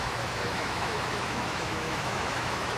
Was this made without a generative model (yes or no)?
no